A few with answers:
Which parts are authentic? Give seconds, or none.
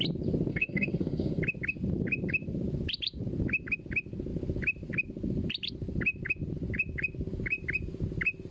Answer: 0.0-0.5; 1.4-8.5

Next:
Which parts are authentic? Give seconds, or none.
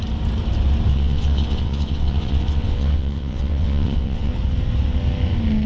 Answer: 0.0-0.9; 4.3-5.7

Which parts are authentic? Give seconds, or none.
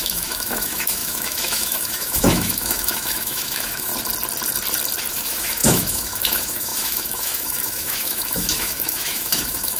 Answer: 3.9-5.1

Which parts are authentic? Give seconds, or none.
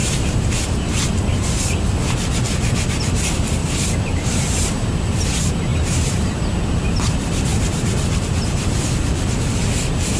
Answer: 0.6-3.6; 4.9-5.7; 6.4-7.5; 8.8-10.2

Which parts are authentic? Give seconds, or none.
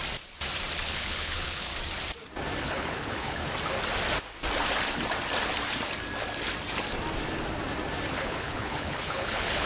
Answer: 0.0-0.8; 1.7-2.6; 3.4-8.1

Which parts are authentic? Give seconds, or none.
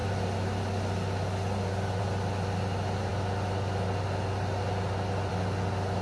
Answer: 0.0-6.0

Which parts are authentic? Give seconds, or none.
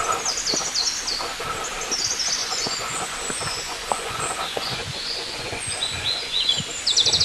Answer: 0.0-2.4; 6.6-7.2